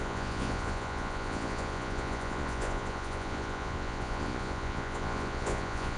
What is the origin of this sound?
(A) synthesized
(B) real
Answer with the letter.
A